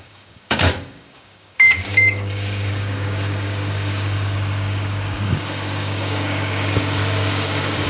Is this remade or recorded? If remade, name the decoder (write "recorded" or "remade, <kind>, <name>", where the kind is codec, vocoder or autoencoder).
remade, codec, DAC